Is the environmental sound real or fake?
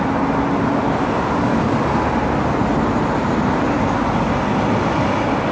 real